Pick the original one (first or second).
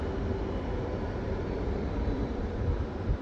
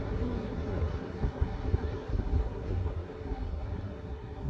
first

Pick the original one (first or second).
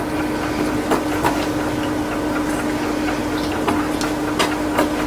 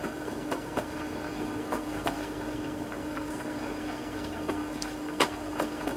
first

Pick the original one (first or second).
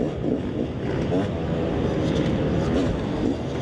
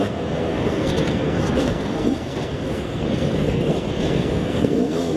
first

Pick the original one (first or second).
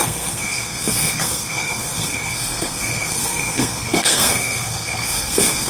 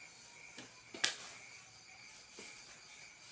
second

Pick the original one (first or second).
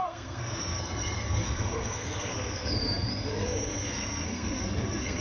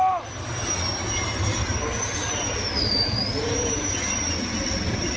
second